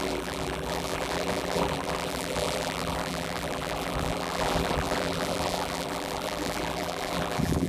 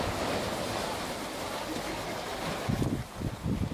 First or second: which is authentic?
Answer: second